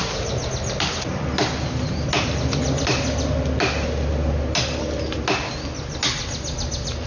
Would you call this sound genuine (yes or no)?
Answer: yes